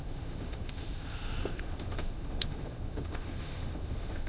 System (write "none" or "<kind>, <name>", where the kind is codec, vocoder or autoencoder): autoencoder, DAC-VAE